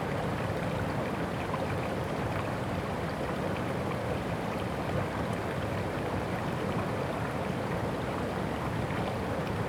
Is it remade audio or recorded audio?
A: remade